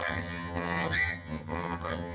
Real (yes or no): no